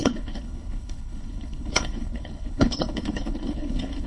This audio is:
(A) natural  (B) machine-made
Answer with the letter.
B